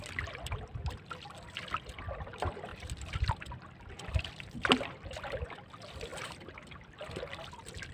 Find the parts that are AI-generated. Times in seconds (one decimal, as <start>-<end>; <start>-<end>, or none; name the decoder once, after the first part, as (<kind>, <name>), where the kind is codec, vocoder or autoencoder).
none